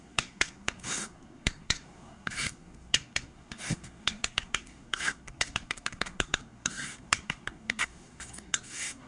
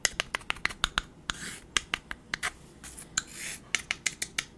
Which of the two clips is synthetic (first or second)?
first